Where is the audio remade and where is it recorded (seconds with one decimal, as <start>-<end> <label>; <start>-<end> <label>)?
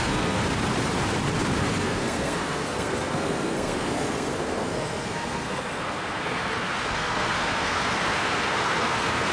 0.0-0.4 remade; 0.4-1.6 recorded; 1.6-9.3 remade